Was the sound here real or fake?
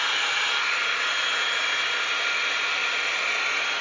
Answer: real